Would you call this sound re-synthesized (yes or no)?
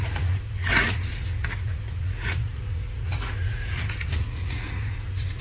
yes